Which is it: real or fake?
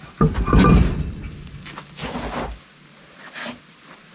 real